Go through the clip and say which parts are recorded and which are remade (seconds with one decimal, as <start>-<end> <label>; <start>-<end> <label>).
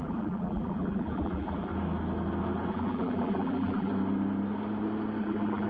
0.0-1.7 remade; 1.7-2.7 recorded; 2.7-3.9 remade; 3.9-5.2 recorded; 5.2-5.7 remade